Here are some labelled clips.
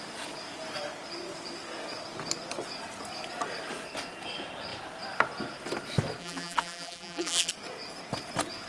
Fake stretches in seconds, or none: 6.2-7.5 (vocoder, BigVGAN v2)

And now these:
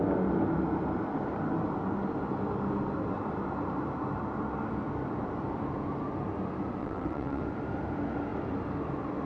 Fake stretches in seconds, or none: 6.8-7.4 (vocoder, WaveNeXt)

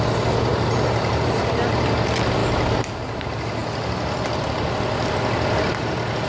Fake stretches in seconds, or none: none

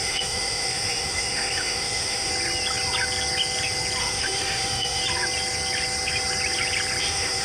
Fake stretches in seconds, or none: 0.0-2.3 (autoencoder, DAC-VAE); 4.0-5.0; 7.0-7.4

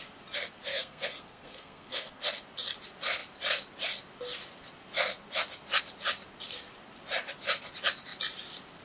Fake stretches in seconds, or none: 0.7-2.2 (codec, SNAC)

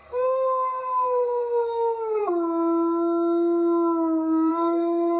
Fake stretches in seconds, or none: 0.0-2.2 (codec, SNAC); 4.5-5.2